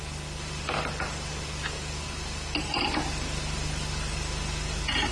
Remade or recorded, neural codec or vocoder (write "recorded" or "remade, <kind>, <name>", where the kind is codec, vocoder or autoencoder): recorded